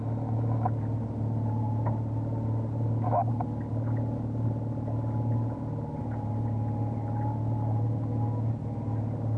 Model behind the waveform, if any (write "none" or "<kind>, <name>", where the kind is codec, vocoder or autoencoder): none